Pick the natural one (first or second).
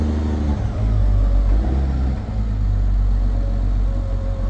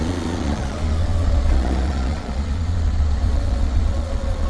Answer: first